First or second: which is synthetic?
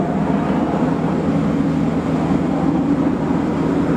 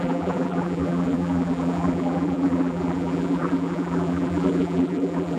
second